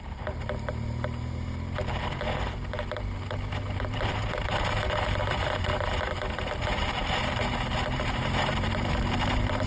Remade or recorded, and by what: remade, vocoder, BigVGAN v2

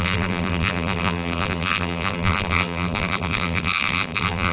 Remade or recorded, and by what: remade, vocoder, BigVGAN v2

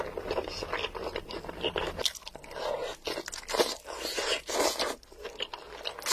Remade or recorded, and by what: recorded